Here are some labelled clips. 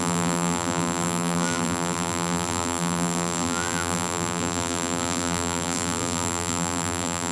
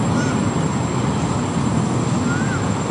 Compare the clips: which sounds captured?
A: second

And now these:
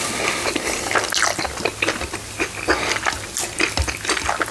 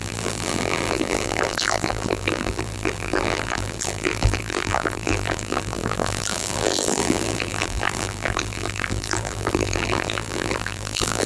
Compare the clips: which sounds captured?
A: first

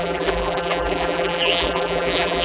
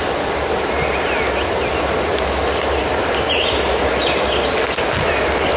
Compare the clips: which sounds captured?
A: second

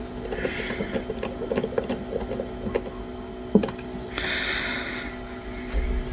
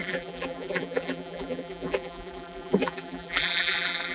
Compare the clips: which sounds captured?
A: first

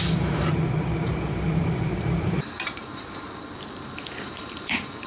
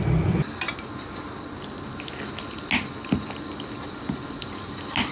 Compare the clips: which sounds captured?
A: second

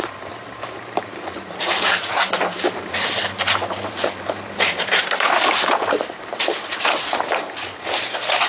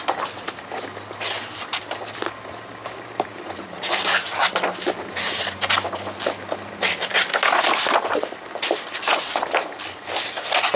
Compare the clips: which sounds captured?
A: second